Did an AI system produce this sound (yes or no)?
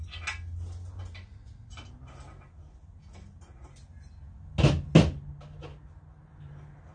no